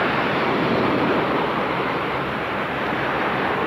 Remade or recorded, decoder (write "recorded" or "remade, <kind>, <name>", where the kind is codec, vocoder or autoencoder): remade, vocoder, BigVGAN v2